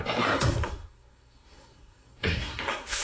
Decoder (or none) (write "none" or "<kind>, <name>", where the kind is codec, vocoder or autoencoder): codec, SNAC